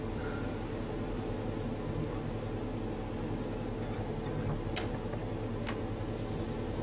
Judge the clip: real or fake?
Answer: real